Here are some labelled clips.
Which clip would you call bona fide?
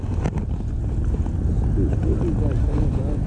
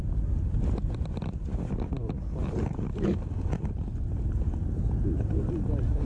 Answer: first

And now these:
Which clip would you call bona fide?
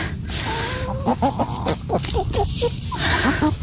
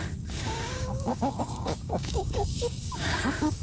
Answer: first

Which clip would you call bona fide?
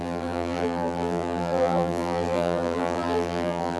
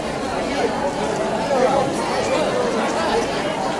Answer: second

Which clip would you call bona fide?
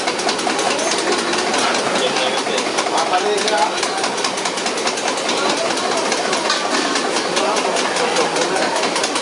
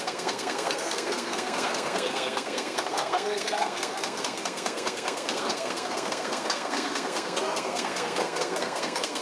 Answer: first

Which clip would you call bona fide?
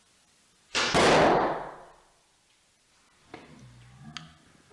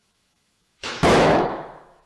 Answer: first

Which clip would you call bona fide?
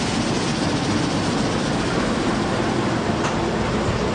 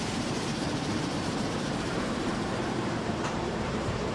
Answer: first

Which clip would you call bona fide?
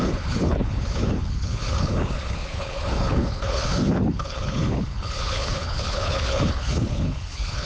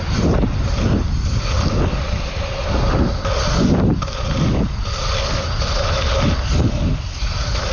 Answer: second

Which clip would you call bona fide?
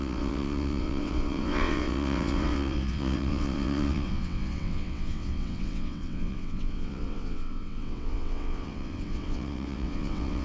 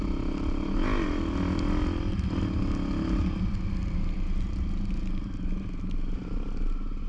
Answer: second